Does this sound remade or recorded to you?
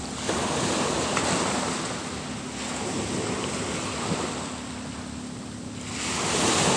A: recorded